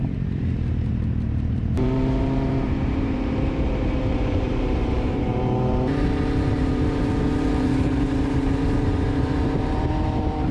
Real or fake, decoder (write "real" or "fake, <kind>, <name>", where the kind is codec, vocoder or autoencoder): fake, vocoder, BigVGAN v2